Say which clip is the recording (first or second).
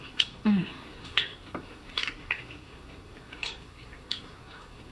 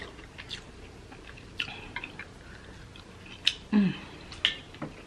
second